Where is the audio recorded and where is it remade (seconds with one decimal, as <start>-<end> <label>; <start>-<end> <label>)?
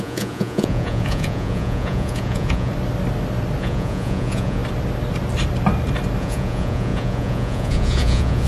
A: 0.0-2.7 remade; 2.7-3.6 recorded; 3.6-4.6 remade; 4.6-6.2 recorded; 6.2-8.5 remade